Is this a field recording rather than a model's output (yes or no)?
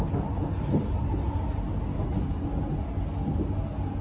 yes